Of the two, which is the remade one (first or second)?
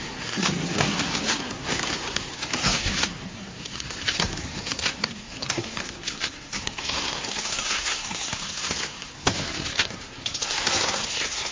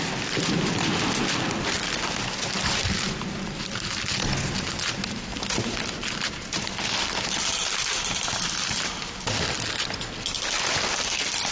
first